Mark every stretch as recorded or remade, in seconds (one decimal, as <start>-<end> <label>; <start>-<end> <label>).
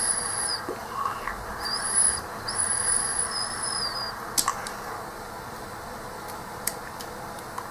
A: 0.0-7.7 recorded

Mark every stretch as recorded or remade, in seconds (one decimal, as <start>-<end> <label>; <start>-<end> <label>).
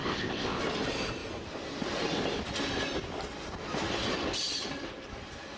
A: 0.0-0.6 remade; 0.6-5.6 recorded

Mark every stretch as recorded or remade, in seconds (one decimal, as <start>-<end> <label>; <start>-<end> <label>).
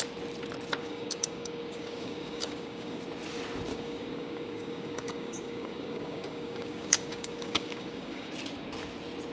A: 0.0-0.8 recorded; 0.8-3.0 remade; 3.0-3.7 recorded; 3.7-8.3 remade; 8.3-9.3 recorded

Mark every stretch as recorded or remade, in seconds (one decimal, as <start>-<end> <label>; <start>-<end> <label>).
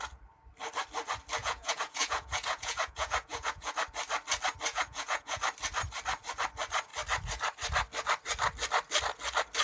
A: 0.0-1.4 recorded; 1.4-3.7 remade; 3.7-4.7 recorded; 4.7-5.4 remade; 5.4-9.6 recorded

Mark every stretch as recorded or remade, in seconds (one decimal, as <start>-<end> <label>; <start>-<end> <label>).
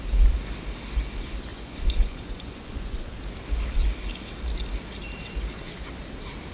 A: 0.0-1.5 recorded; 1.5-3.2 remade; 3.2-6.5 recorded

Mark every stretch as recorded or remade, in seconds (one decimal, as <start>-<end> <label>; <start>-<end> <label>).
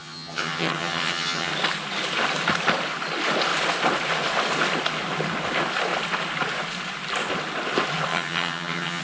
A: 0.0-1.5 remade; 1.5-8.1 recorded; 8.1-9.0 remade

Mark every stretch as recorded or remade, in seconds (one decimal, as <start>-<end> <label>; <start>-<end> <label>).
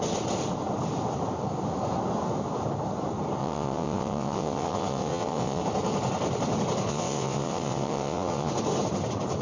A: 0.0-3.4 recorded; 3.4-5.6 remade; 5.6-6.9 recorded; 6.9-8.5 remade; 8.5-9.4 recorded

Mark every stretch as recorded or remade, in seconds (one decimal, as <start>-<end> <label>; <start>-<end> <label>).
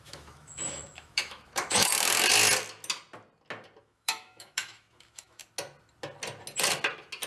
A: 0.0-1.9 remade; 1.9-3.8 recorded; 3.8-5.4 remade; 5.4-7.3 recorded